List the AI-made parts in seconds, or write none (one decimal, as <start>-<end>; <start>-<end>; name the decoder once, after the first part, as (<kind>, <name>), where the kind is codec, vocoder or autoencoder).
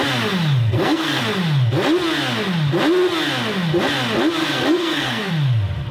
0.6-1.2 (codec, SNAC); 4.4-5.3